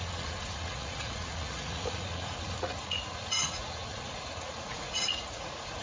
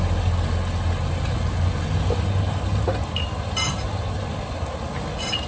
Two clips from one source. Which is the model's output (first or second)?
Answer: first